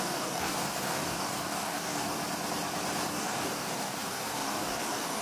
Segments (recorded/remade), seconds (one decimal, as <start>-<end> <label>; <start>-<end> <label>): 0.0-2.2 remade; 2.2-3.1 recorded; 3.1-5.2 remade